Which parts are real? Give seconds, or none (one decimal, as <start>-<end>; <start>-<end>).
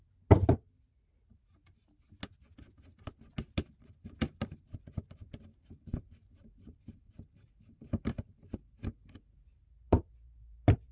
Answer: 0.0-3.6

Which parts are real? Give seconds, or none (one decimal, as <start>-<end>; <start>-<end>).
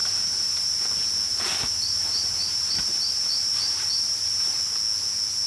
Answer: 0.8-1.3; 4.6-5.5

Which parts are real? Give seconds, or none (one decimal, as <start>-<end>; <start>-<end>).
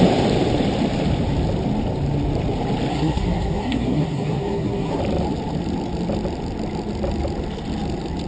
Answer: 0.0-2.9; 5.0-8.3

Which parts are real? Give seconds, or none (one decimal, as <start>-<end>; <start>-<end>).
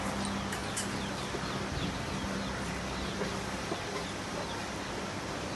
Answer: 0.0-5.6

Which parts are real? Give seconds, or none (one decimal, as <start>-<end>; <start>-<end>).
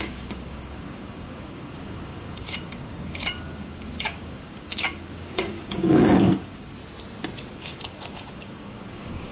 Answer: 6.8-7.5